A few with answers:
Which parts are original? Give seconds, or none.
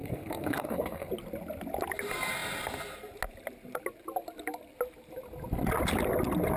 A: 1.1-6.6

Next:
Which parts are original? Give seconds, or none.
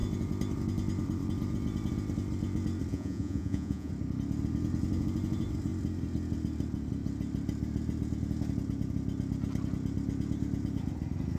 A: 0.0-2.9; 3.9-11.4